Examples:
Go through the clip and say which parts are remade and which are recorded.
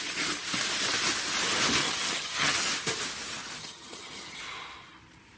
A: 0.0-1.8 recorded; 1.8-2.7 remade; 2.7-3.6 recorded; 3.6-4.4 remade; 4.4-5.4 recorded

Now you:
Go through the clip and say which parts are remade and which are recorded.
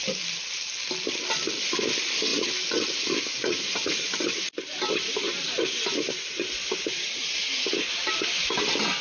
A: 0.0-9.0 recorded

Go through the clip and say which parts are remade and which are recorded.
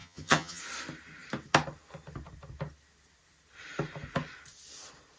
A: 0.0-0.6 remade; 0.6-5.2 recorded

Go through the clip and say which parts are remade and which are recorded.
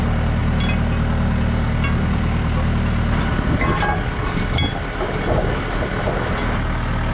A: 0.0-7.1 recorded